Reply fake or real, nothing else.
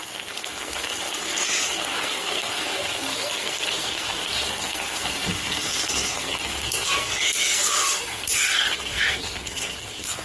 fake